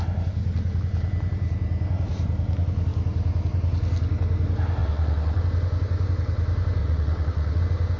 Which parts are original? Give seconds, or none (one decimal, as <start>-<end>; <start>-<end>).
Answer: 0.0-4.8; 5.4-6.8; 7.6-8.0